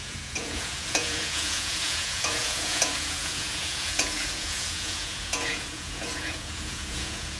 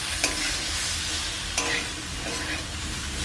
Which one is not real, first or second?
first